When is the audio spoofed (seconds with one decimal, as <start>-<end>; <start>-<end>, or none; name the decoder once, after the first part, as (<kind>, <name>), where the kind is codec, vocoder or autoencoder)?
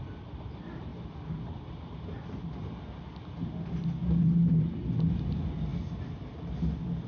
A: none